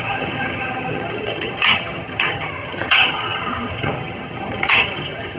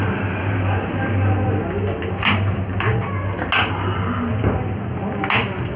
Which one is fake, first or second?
first